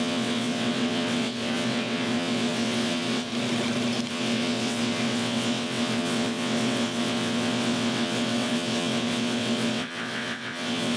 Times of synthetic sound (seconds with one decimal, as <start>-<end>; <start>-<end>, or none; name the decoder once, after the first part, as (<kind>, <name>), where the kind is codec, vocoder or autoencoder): 0.0-3.3 (vocoder, WaveNeXt); 4.1-11.0